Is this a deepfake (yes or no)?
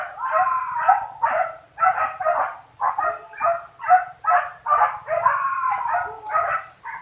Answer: no